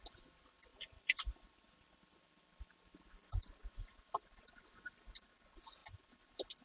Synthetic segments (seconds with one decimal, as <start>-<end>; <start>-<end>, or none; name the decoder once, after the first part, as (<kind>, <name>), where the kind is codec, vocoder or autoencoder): 0.7-2.2 (vocoder, BigVGAN v2)